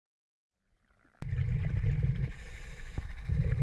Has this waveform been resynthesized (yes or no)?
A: no